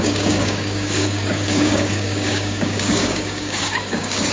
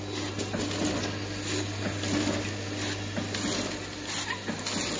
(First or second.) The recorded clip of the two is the second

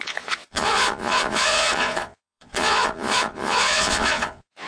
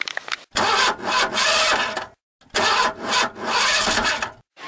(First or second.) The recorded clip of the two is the second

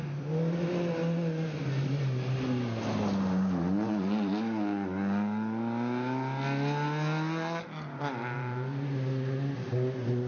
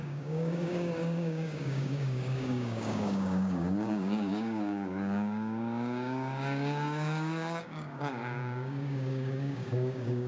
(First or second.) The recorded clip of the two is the first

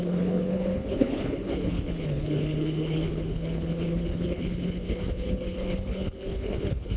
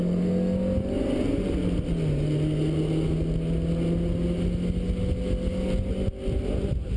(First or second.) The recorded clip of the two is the second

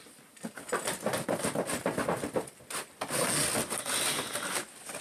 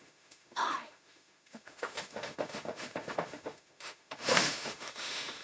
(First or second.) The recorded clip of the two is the first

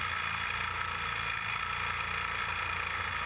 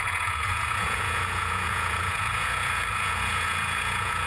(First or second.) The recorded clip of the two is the first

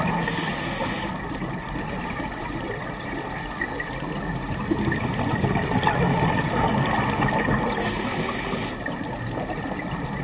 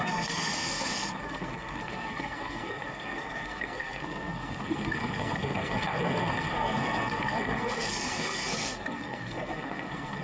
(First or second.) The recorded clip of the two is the first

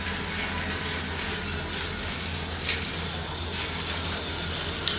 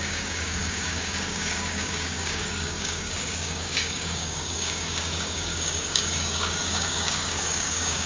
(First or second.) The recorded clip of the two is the first